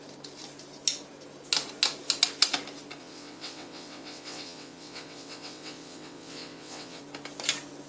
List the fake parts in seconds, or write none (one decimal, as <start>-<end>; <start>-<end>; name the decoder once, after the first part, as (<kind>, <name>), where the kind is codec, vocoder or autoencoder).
3.0-7.0 (vocoder, WaveNeXt)